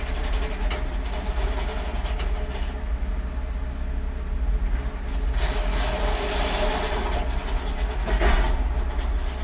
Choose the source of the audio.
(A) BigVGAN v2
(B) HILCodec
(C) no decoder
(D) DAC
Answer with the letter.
C